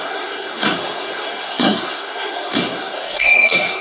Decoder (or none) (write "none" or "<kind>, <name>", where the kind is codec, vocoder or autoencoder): codec, SNAC